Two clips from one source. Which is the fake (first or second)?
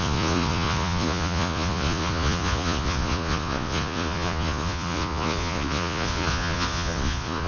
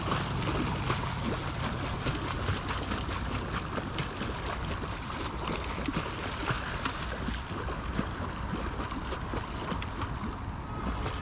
first